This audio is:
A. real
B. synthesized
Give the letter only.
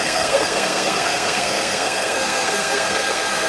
B